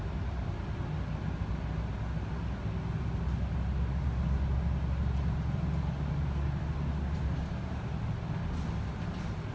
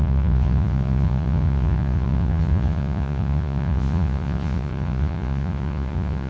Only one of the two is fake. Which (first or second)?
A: second